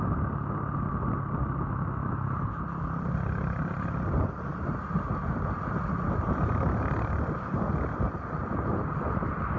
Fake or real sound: real